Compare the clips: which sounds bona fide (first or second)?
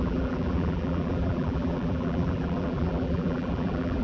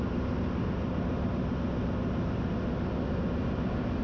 second